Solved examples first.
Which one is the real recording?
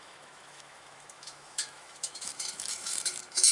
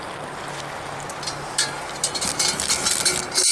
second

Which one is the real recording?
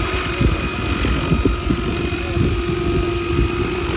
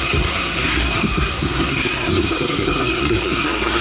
first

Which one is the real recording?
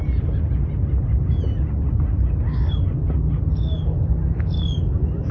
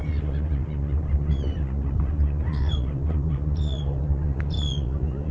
first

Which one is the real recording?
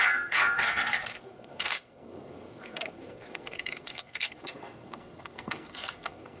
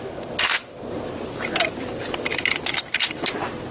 second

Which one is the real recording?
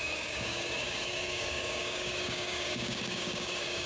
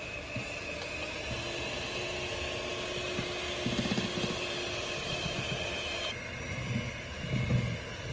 second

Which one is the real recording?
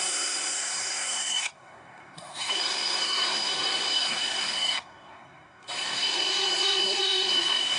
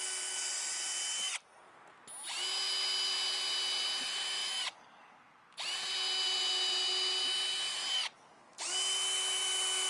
second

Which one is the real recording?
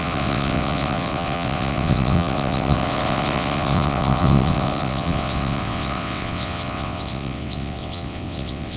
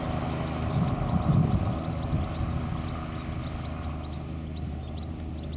second